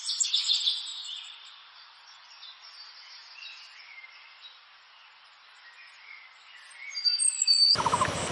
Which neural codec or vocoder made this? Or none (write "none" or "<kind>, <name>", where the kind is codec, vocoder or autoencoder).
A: none